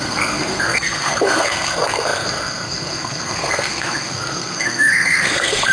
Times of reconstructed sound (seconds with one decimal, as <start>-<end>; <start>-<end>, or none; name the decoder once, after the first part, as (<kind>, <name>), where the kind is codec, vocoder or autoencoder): 0.0-5.7 (codec, SNAC)